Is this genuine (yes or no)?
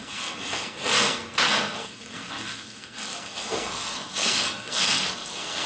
no